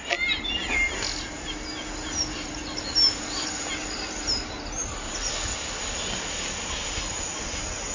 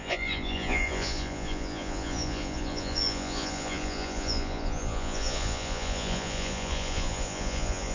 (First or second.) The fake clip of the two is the second